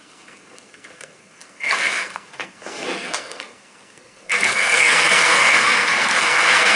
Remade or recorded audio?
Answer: remade